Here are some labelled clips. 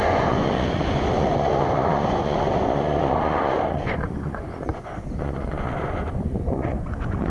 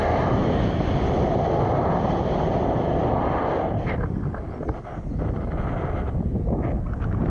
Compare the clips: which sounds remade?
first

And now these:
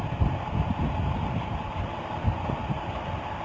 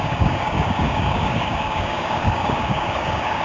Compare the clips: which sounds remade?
second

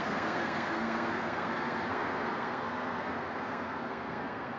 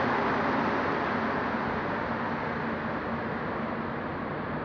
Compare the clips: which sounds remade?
first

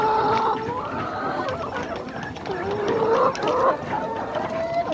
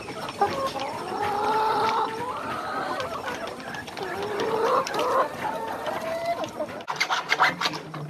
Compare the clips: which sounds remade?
second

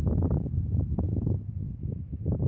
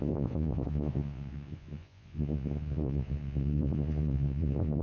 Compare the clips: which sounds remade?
second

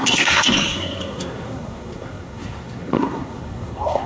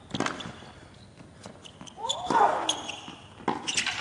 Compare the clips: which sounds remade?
first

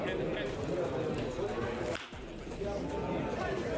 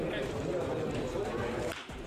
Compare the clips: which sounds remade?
second